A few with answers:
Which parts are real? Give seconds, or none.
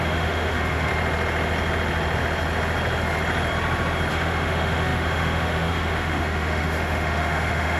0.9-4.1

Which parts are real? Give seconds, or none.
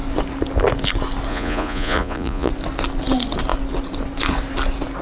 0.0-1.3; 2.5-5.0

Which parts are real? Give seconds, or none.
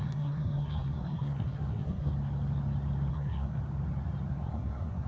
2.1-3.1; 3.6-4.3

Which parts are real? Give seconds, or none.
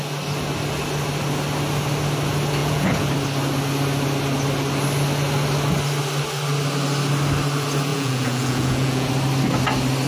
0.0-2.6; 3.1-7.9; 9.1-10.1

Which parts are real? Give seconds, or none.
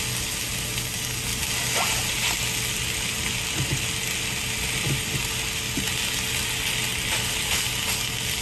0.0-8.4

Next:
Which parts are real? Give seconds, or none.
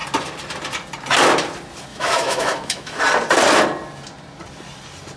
0.0-1.9; 3.0-5.2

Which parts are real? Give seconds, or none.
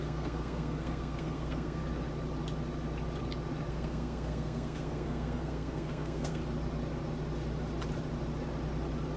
1.8-3.7; 6.4-9.2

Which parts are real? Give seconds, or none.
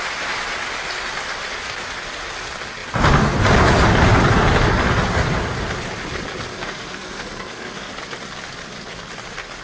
0.0-6.5; 7.9-9.6